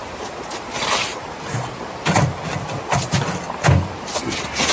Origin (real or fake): real